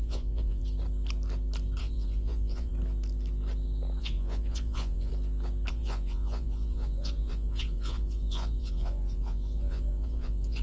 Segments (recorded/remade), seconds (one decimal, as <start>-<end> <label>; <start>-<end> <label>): 0.0-0.6 remade; 0.6-1.8 recorded; 1.8-2.7 remade; 2.7-4.0 recorded; 4.0-5.1 remade; 5.1-5.7 recorded; 5.7-10.6 remade